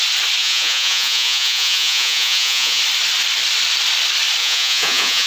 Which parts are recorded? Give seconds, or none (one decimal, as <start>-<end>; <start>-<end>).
0.0-0.4; 2.8-4.4